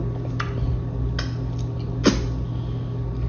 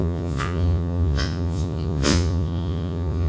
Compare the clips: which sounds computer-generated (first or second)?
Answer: second